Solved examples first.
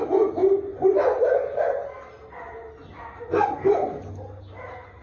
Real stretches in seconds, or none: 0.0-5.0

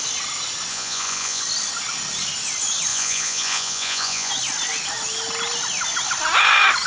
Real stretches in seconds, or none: 0.0-0.7; 1.4-2.9; 4.3-6.9

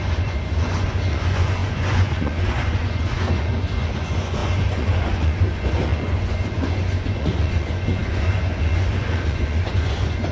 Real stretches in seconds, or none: none

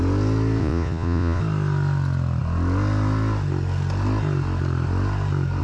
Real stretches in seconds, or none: 0.0-0.6; 1.4-5.6

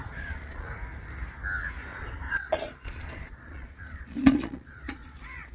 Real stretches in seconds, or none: 0.7-1.9

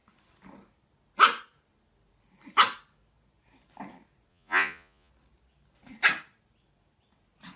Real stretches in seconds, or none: 0.0-4.3; 5.1-7.6

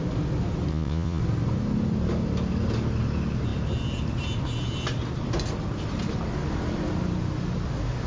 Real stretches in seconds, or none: 0.0-0.7; 1.2-8.1

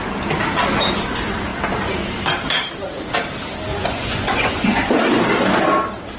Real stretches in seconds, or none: 0.0-3.7; 4.9-6.2